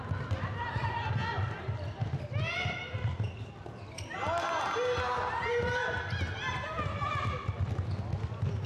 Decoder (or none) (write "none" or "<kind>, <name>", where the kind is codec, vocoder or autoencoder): none